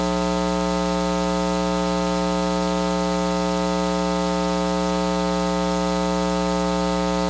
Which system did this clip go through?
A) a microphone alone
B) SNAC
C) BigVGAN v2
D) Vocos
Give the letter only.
A